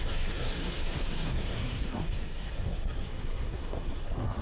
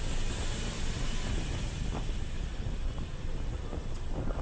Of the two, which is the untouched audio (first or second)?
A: second